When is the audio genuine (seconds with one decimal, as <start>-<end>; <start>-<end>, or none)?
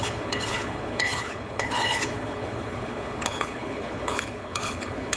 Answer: none